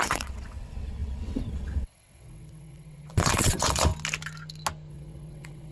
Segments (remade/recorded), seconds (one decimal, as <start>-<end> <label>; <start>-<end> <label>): 0.0-3.9 remade; 3.9-4.9 recorded; 4.9-5.7 remade